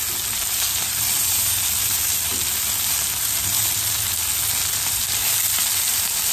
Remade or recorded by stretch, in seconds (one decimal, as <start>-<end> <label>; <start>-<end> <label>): 0.0-6.3 recorded